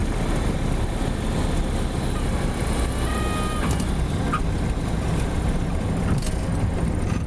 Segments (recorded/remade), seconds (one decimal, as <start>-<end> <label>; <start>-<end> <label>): 0.0-7.3 recorded